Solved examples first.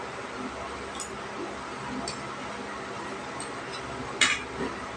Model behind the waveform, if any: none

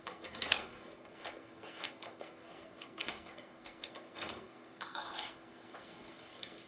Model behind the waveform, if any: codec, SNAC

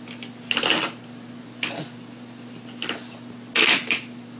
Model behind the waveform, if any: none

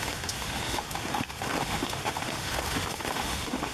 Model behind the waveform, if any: autoencoder, DAC-VAE